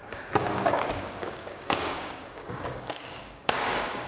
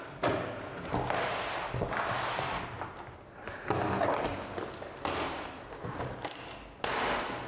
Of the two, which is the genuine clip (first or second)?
second